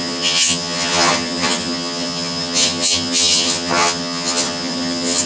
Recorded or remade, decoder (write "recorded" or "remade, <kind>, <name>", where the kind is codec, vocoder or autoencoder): remade, vocoder, HiFi-GAN